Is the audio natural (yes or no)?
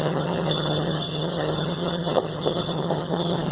no